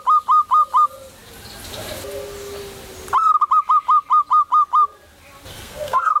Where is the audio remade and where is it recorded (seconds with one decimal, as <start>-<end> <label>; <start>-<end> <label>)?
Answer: 0.0-5.5 recorded; 5.5-6.2 remade